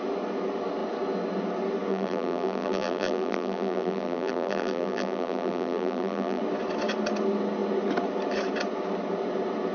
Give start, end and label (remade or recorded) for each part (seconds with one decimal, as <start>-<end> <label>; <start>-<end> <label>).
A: 0.0-1.9 recorded; 1.9-6.4 remade; 6.4-9.7 recorded